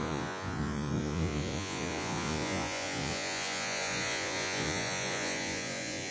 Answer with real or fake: fake